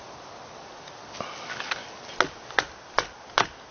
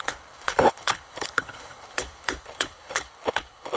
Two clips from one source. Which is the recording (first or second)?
first